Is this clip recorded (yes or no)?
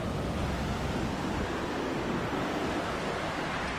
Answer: yes